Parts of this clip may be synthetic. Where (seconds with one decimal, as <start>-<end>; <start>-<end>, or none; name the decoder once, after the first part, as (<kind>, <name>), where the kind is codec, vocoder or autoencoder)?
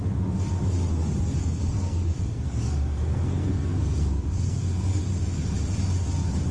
1.4-5.0 (codec, SNAC)